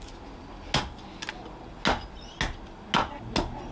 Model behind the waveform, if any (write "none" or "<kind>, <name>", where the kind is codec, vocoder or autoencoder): none